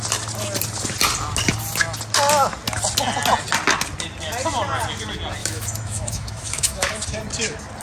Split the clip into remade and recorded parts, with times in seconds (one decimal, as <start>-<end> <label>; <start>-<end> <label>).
0.0-5.4 recorded; 5.4-7.2 remade; 7.2-7.8 recorded